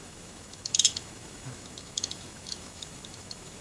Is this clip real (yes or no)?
no